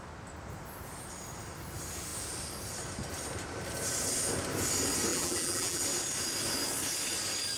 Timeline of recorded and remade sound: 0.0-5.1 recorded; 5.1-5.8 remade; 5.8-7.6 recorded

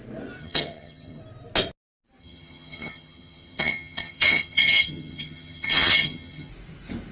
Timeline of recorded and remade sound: 0.0-0.4 recorded; 0.4-1.2 remade; 1.2-2.2 recorded; 2.2-6.5 remade; 6.5-7.1 recorded